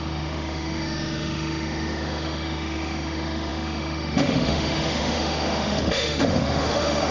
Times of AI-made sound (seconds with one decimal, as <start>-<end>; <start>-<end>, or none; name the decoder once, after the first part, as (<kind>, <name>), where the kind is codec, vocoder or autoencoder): 0.0-7.1 (autoencoder, DAC-VAE)